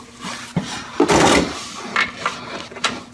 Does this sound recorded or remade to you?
recorded